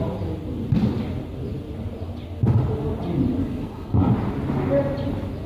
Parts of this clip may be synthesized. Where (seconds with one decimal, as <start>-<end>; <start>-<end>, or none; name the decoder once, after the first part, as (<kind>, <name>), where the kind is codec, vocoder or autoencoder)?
3.4-4.1 (codec, SNAC)